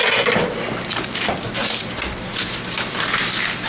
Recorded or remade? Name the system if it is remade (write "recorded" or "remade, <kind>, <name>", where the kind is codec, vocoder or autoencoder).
recorded